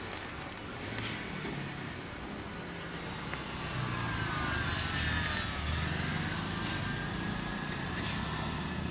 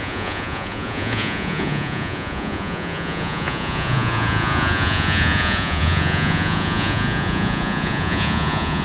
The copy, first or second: second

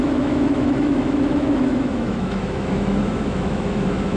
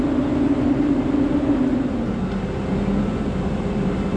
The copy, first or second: first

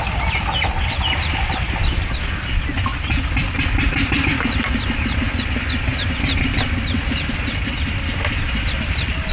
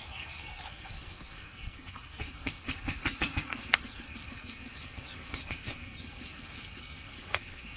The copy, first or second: second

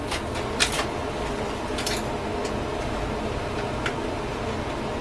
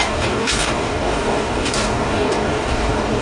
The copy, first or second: second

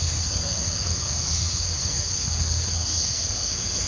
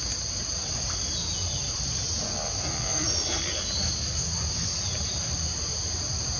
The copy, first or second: first